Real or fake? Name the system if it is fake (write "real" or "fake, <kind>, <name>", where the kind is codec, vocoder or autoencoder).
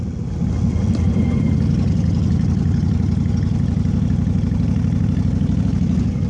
real